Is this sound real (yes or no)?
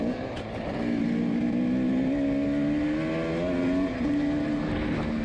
yes